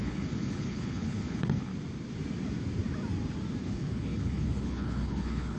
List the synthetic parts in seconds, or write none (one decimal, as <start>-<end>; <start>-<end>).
0.0-1.7; 3.6-5.6